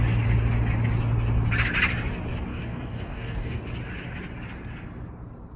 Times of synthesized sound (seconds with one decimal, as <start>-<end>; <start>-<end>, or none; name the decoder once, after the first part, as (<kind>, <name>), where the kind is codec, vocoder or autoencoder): 2.5-3.6 (codec, DAC)